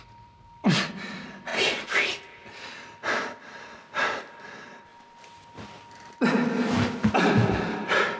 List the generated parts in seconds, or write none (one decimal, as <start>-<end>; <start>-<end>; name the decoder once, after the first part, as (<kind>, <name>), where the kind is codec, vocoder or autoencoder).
0.0-1.5 (vocoder, BigVGAN v2); 3.4-4.9; 7.1-8.2